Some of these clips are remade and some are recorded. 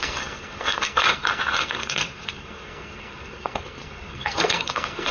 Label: remade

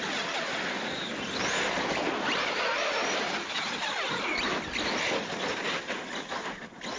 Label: recorded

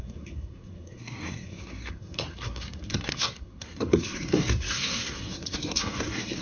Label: remade